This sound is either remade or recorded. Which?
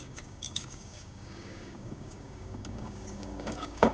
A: remade